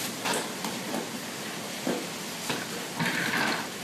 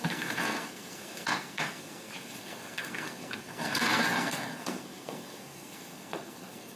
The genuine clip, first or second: first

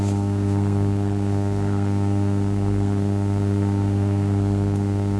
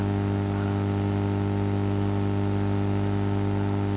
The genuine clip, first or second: second